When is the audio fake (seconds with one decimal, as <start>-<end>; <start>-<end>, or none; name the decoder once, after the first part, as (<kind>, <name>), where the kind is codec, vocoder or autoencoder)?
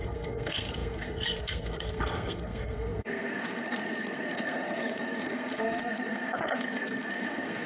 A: 0.0-7.7 (codec, SNAC)